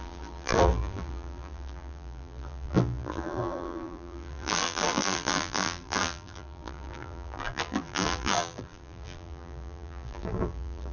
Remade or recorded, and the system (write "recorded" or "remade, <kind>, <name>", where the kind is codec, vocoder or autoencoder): remade, vocoder, BigVGAN v2